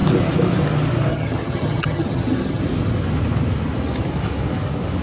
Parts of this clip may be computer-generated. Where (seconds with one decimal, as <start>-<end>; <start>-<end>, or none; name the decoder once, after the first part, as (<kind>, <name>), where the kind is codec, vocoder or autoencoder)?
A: 1.1-2.6 (vocoder, HiFi-GAN)